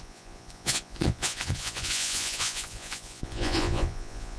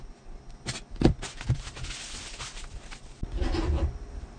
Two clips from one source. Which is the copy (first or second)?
first